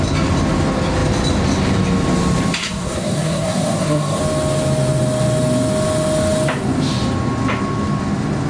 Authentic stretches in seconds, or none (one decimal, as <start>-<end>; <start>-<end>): 0.0-2.6; 4.2-8.5

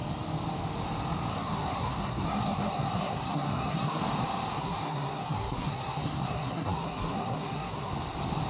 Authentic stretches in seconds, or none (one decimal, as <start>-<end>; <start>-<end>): 0.0-1.3; 4.0-4.6; 7.9-8.5

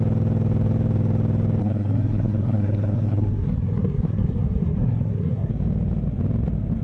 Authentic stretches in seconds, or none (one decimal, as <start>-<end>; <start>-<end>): 0.0-1.6; 5.5-6.8

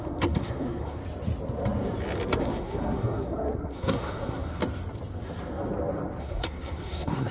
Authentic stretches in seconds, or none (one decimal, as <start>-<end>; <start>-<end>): 1.0-2.4; 4.6-6.2

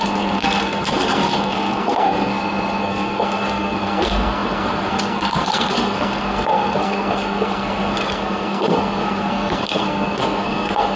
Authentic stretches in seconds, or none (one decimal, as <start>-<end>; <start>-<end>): 2.3-2.8

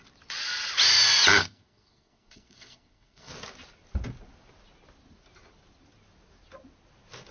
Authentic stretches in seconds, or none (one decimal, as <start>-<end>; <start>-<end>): 0.0-1.4; 3.3-7.3

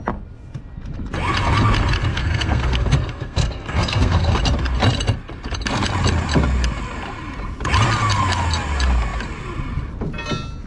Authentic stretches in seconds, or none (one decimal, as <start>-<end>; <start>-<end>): 0.0-2.1; 4.4-10.7